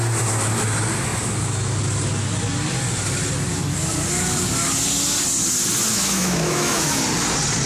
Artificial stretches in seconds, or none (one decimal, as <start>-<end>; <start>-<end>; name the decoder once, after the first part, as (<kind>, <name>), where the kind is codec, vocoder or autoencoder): 5.9-7.0 (autoencoder, DAC-VAE)